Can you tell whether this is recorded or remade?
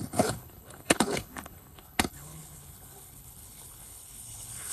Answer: remade